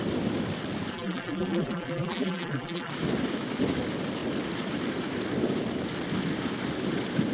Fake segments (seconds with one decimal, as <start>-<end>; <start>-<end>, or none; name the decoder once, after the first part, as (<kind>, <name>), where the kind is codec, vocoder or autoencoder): 0.9-2.9 (vocoder, BigVGAN v2)